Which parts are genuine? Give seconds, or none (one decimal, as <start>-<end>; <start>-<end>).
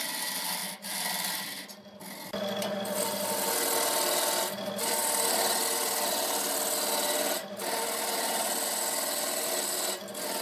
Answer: 0.0-10.4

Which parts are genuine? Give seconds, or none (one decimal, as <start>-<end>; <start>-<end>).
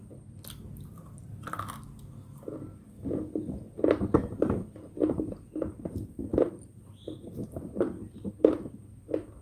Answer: 0.0-9.4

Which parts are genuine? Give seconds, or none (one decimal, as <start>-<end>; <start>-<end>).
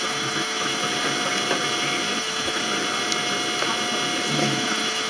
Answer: 0.8-2.2; 2.6-4.3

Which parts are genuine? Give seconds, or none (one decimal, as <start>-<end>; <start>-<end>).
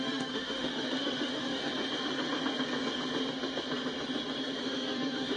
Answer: 1.6-4.6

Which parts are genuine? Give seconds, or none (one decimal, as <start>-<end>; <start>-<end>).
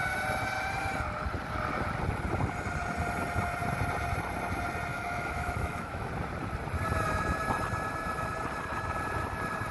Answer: 0.0-4.9; 6.1-9.7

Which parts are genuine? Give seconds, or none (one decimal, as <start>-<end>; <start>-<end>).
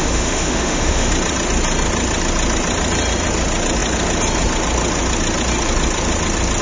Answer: 1.1-6.6